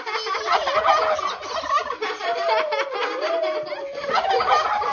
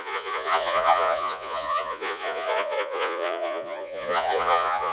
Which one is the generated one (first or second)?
second